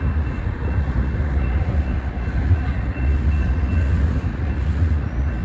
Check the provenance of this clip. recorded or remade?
remade